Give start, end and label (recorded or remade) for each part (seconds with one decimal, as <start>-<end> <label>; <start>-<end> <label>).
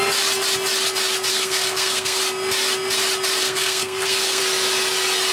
0.0-1.3 recorded; 1.3-2.2 remade; 2.2-3.4 recorded; 3.4-4.4 remade; 4.4-5.3 recorded